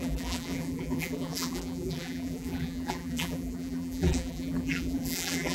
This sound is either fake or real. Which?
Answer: fake